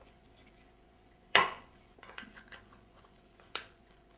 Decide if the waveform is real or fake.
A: fake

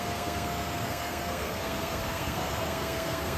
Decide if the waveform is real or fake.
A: fake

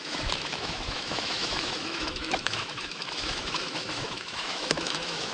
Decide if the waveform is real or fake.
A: fake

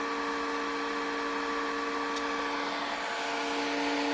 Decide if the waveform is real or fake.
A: real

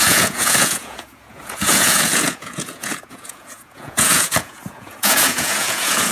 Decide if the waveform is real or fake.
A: fake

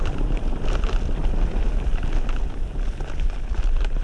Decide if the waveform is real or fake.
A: real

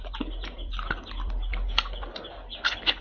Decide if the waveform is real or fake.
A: real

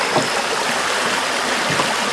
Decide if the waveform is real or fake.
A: real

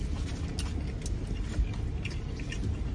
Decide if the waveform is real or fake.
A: real